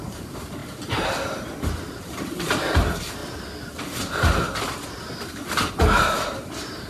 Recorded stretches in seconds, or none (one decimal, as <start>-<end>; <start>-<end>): 0.6-2.0; 3.2-5.7